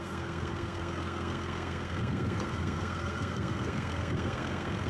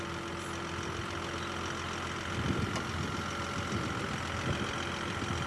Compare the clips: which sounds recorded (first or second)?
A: second